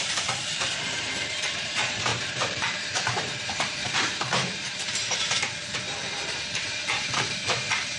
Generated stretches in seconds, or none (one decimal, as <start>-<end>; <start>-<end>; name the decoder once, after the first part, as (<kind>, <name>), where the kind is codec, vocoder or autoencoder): 0.0-8.0 (vocoder, BigVGAN v2)